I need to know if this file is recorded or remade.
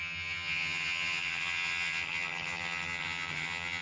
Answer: remade